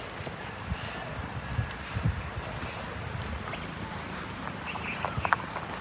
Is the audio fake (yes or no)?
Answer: no